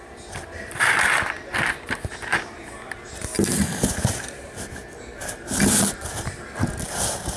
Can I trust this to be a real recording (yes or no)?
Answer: yes